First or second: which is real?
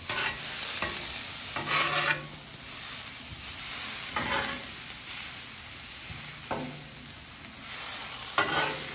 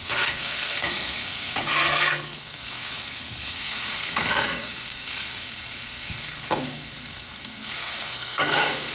first